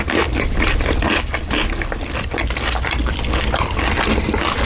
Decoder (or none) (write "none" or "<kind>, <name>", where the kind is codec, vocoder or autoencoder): none